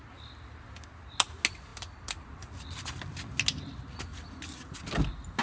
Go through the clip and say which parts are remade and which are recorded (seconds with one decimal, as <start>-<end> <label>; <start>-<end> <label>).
0.0-1.7 recorded; 1.7-3.0 remade; 3.0-4.1 recorded; 4.1-4.8 remade; 4.8-5.4 recorded